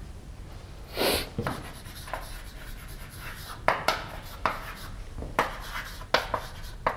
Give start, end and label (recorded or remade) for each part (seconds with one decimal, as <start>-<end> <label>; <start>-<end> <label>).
0.0-1.4 recorded; 1.4-2.0 remade; 2.0-2.5 recorded; 2.5-5.7 remade; 5.7-7.0 recorded